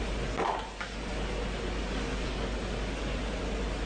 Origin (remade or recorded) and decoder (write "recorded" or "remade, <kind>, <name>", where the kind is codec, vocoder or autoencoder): recorded